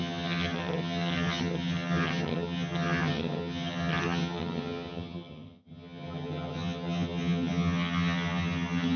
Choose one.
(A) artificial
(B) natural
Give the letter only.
A